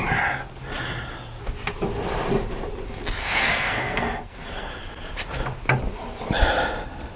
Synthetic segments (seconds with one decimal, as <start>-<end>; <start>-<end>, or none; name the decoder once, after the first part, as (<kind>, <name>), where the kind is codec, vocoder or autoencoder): 3.2-4.7 (codec, SNAC)